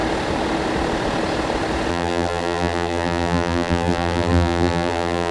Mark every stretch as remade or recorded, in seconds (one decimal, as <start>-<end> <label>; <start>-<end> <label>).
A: 0.0-1.9 recorded; 1.9-5.3 remade